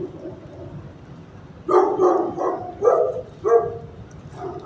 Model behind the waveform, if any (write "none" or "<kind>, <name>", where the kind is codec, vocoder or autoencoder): none